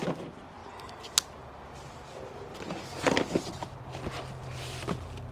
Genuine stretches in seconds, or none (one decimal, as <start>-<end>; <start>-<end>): 0.0-5.3